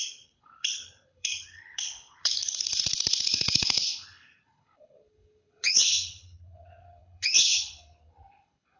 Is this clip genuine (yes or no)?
no